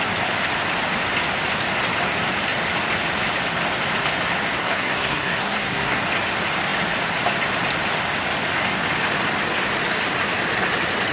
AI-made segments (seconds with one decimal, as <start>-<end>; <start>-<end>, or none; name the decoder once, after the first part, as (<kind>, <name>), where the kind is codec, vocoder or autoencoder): 4.6-6.0 (codec, SNAC)